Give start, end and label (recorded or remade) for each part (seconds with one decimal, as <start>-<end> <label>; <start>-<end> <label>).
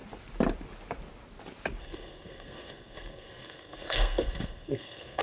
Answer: 0.0-1.8 recorded; 1.8-5.2 remade